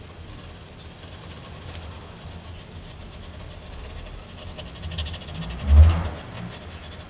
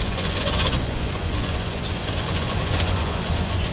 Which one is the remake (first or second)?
second